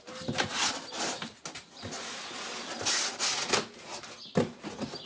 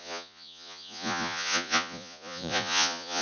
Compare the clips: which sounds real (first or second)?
first